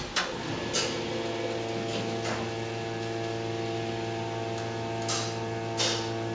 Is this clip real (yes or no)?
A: yes